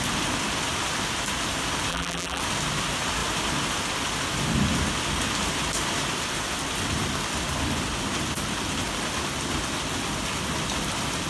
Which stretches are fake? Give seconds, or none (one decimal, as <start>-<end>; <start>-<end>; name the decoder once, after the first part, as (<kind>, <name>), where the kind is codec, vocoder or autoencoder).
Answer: 1.9-2.4 (vocoder, BigVGAN v2)